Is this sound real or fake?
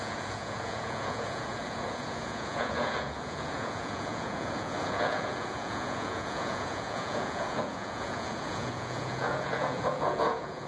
fake